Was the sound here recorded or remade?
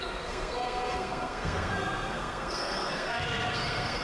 remade